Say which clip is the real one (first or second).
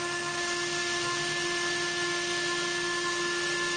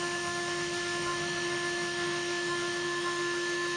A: first